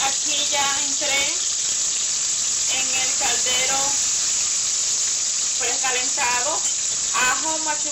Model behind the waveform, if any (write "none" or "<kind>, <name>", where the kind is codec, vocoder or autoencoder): none